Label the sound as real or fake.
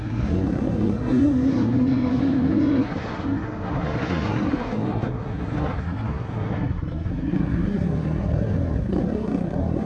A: fake